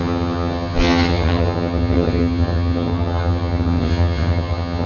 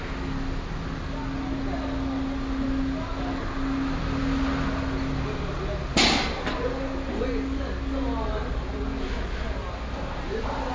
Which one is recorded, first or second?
second